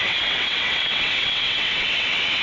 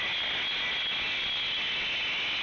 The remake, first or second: first